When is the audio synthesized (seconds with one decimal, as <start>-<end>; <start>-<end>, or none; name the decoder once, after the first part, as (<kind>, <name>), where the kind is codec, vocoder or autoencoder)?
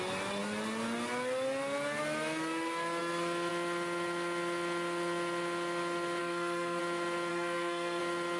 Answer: 6.2-6.8 (codec, SNAC); 7.3-8.0